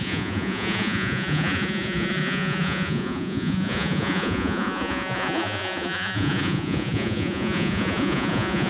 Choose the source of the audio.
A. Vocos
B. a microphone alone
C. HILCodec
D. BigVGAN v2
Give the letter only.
A